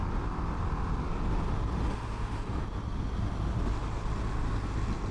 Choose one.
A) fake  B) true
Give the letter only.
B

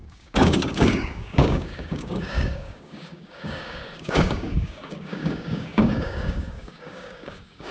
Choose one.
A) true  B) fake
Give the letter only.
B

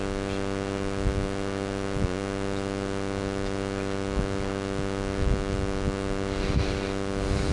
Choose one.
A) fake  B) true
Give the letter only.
B